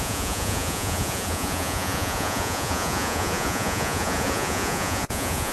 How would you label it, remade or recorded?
remade